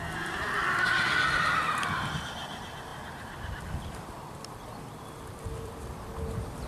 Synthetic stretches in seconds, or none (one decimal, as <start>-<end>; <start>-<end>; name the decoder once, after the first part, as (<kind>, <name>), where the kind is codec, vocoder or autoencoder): 0.0-6.7 (vocoder, BigVGAN v2)

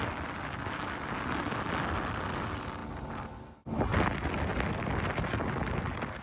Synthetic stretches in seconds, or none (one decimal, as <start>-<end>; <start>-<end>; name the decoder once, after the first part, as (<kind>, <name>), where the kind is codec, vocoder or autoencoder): none